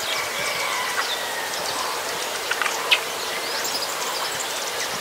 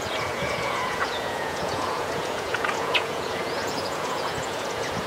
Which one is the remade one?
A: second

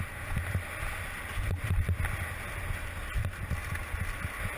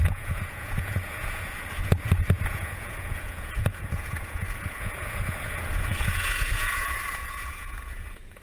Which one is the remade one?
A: second